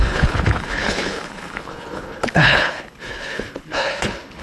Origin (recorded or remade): remade